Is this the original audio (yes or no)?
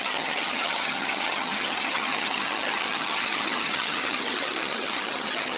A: no